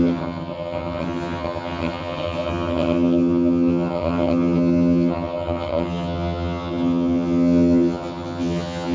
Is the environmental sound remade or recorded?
remade